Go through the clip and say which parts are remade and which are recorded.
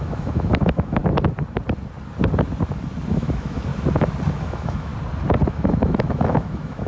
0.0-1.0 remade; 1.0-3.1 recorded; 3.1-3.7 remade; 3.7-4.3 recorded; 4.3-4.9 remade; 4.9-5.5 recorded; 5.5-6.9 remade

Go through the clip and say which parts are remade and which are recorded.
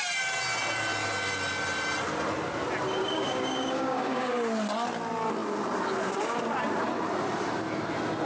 0.0-3.0 recorded; 3.0-4.3 remade; 4.3-8.2 recorded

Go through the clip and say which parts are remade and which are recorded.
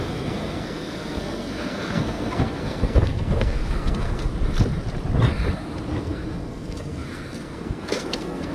0.0-4.3 remade; 4.3-6.0 recorded; 6.0-8.5 remade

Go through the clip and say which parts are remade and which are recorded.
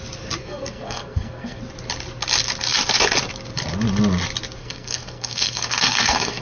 0.0-0.4 recorded; 0.4-1.6 remade; 1.6-4.6 recorded; 4.6-6.4 remade